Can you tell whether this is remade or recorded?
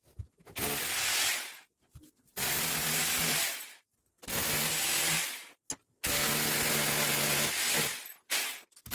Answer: recorded